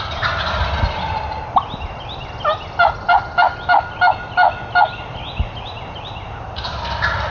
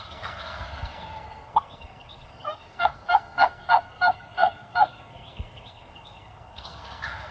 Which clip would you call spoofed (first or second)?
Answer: second